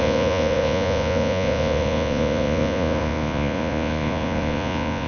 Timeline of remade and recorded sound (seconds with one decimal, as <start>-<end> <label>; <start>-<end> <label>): 0.0-5.1 remade